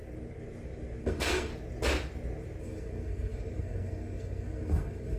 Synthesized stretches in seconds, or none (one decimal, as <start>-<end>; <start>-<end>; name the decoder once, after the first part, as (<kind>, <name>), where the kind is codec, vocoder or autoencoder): 1.0-1.5 (codec, SNAC); 2.6-5.2